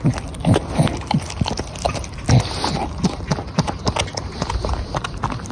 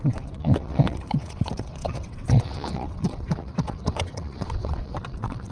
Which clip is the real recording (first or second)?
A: first